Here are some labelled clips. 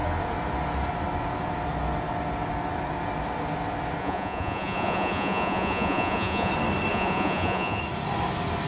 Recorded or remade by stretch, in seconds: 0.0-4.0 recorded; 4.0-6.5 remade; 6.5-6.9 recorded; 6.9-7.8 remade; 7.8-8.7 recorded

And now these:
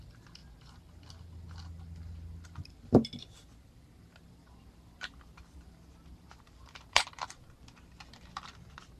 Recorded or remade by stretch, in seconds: 0.0-0.4 remade; 0.4-3.2 recorded; 3.2-9.0 remade

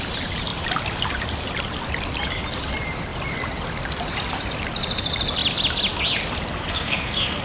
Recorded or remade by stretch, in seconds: 0.0-6.7 recorded; 6.7-7.4 remade

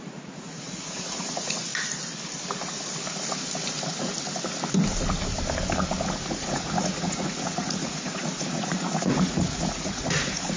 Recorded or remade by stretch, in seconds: 0.0-1.7 remade; 1.7-6.2 recorded; 6.2-10.6 remade

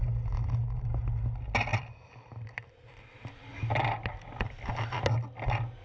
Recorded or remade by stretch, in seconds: 0.0-1.7 recorded; 1.7-4.7 remade; 4.7-5.8 recorded

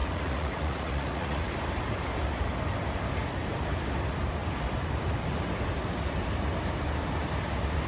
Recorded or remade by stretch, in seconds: 0.0-1.5 remade; 1.5-7.9 recorded

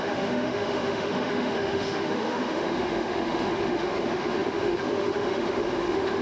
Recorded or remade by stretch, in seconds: 0.0-6.2 remade